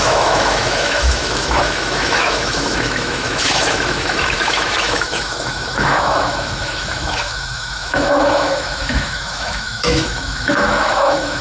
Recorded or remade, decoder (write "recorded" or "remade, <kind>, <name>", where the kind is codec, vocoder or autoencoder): remade, autoencoder, DAC-VAE